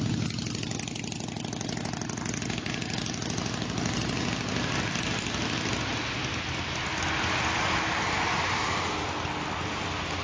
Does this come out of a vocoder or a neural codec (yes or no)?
no